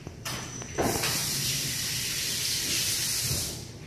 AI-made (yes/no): yes